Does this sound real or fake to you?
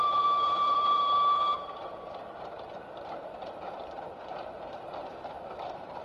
fake